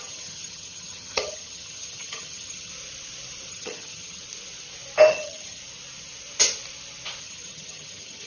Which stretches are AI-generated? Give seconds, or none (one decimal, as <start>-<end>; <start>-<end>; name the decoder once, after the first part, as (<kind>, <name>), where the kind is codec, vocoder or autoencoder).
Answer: 0.0-2.7 (vocoder, HiFi-GAN); 3.5-4.2; 5.1-5.6; 7.2-8.3